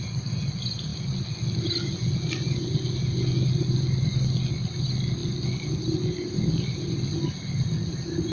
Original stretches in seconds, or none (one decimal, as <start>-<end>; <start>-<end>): 0.0-8.3